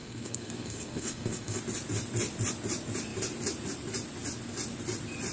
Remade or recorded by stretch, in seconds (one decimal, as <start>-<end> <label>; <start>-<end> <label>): 0.0-1.6 remade; 1.6-5.3 recorded